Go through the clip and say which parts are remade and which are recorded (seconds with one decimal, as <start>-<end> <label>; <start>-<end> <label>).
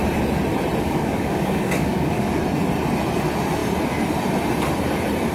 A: 0.0-0.8 recorded; 0.8-2.4 remade; 2.4-5.3 recorded